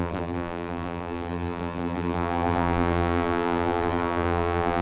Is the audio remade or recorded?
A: remade